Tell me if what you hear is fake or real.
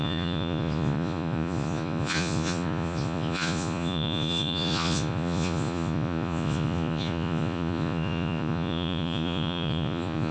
fake